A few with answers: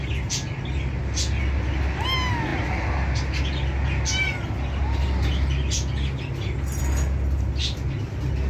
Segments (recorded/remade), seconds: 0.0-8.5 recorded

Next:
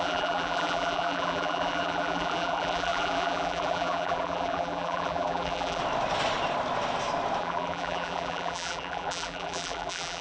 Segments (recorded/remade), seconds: 0.0-5.8 remade; 5.8-7.4 recorded; 7.4-10.2 remade

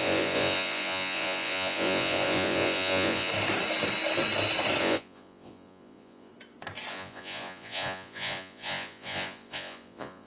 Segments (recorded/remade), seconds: 0.0-3.3 remade; 3.3-4.8 recorded; 4.8-6.3 remade; 6.3-6.9 recorded; 6.9-10.3 remade

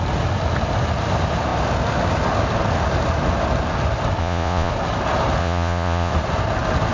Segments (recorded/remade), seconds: 0.0-4.2 recorded; 4.2-4.7 remade; 4.7-5.4 recorded; 5.4-6.1 remade; 6.1-6.9 recorded

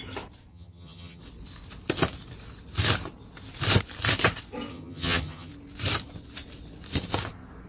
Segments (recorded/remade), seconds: 0.0-0.5 recorded; 0.5-1.2 remade; 1.2-4.7 recorded; 4.7-5.5 remade; 5.5-7.7 recorded

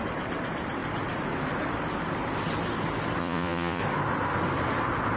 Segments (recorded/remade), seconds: 0.0-3.2 recorded; 3.2-3.8 remade; 3.8-5.2 recorded

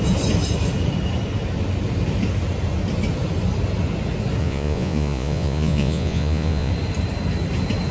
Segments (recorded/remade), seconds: 0.0-4.4 recorded; 4.4-6.7 remade; 6.7-7.9 recorded